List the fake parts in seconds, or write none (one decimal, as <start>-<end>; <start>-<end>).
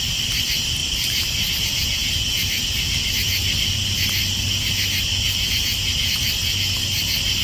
0.8-1.5